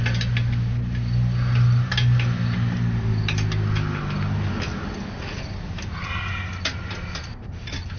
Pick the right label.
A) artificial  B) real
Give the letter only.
B